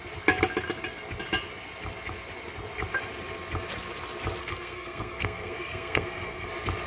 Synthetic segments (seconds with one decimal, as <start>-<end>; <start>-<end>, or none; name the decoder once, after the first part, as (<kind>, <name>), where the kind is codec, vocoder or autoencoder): 4.4-6.5 (codec, SNAC)